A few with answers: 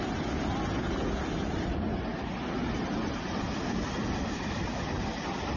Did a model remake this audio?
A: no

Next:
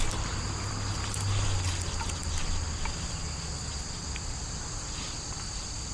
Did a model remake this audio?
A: no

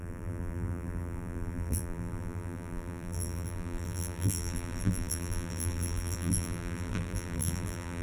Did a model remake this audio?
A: yes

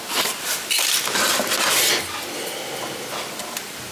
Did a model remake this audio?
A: no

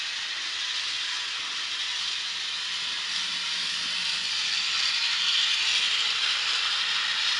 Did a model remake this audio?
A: no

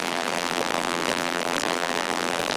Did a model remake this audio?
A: yes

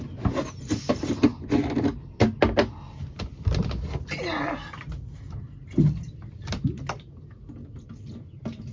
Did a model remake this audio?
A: no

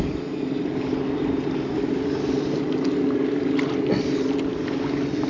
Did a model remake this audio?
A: no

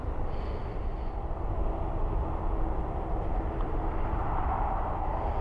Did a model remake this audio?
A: no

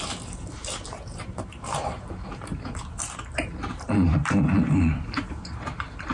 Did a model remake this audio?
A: yes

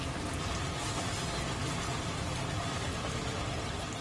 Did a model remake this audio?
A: no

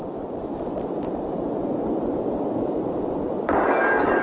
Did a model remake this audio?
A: no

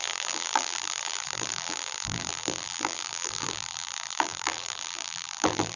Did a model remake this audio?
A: yes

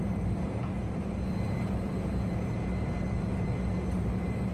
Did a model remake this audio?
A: yes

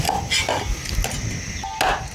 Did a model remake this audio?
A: no